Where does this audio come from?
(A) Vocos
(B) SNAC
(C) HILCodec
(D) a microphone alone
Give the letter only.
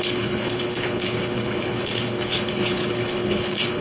C